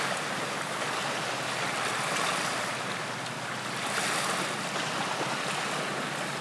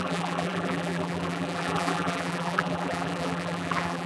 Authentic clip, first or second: first